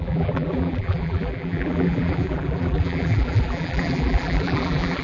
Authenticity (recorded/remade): remade